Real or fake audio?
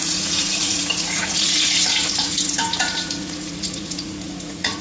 fake